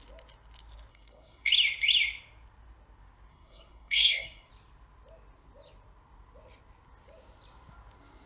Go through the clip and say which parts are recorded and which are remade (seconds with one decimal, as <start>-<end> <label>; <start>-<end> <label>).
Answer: 0.0-0.9 recorded; 0.9-1.5 remade; 1.5-3.3 recorded; 3.3-4.5 remade; 4.5-8.3 recorded